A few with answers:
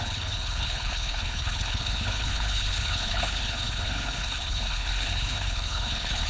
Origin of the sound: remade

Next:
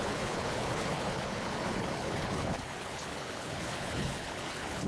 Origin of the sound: remade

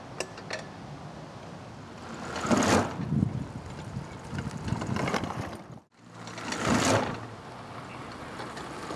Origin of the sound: recorded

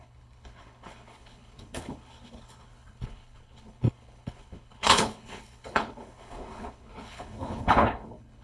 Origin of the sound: remade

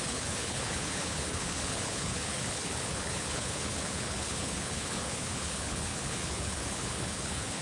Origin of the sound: remade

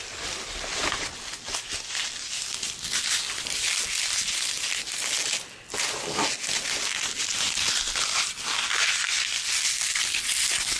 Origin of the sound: recorded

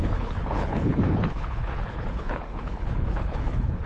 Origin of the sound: remade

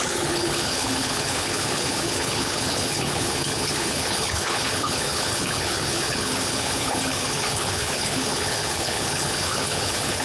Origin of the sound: remade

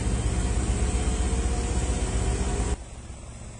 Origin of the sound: recorded